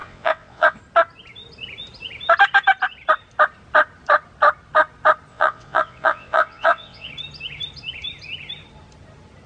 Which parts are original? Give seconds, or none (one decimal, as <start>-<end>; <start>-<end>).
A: 0.8-5.3; 7.1-9.5